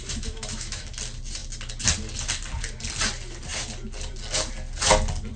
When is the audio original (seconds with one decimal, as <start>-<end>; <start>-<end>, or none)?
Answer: 0.9-5.4

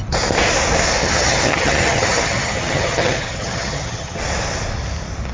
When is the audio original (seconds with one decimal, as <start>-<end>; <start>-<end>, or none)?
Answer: 0.0-1.0; 4.2-5.3